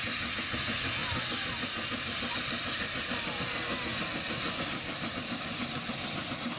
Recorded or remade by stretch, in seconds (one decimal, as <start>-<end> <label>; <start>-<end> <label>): 0.0-6.6 recorded